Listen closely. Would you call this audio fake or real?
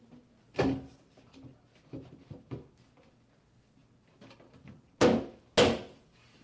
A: real